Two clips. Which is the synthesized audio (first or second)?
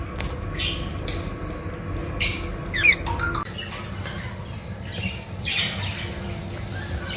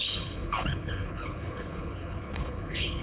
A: second